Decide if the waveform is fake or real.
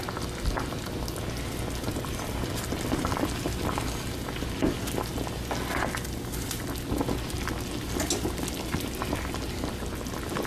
real